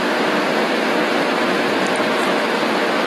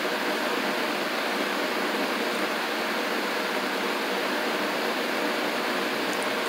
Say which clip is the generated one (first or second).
first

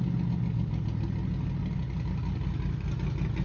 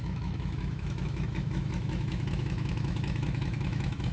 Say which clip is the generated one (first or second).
second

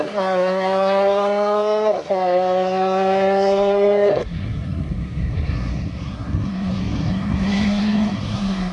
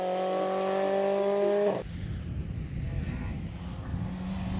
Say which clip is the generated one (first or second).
first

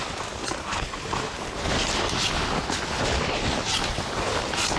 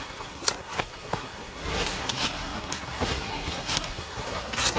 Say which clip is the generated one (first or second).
second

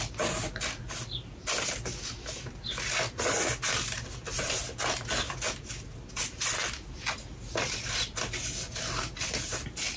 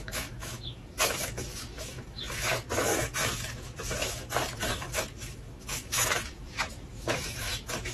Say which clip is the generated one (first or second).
second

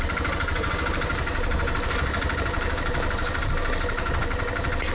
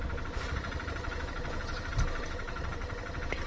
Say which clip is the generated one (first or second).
second